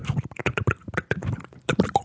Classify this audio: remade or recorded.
remade